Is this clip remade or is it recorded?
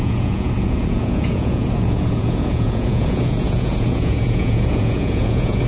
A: remade